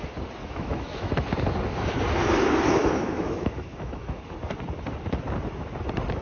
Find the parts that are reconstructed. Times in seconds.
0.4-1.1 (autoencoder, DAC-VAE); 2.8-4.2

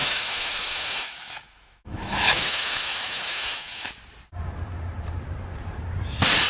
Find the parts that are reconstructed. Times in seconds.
0.0-3.9 (autoencoder, DAC-VAE)

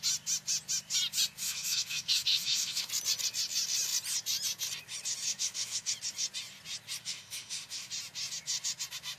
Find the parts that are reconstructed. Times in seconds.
1.4-2.9 (autoencoder, DAC-VAE); 5.3-5.9; 7.0-7.9

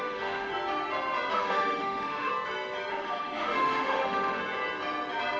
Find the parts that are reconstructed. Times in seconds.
0.0-0.5 (autoencoder, DAC-VAE); 1.3-2.3; 2.9-4.4

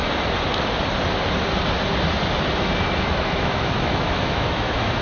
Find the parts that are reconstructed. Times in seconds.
3.0-5.0 (autoencoder, DAC-VAE)

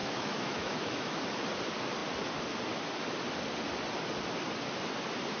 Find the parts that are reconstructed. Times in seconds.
0.0-1.2 (autoencoder, DAC-VAE)